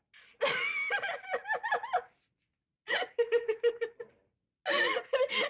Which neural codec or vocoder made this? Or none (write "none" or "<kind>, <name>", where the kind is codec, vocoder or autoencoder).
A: none